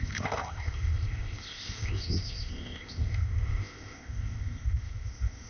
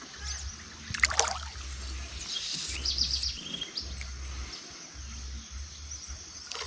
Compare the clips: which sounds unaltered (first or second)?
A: second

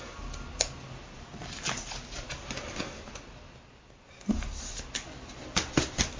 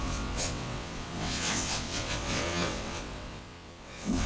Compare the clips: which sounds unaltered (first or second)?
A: first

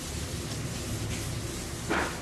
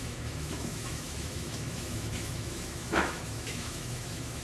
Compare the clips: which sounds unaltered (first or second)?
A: first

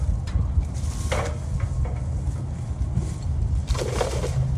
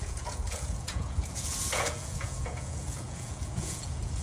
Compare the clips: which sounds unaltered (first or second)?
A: first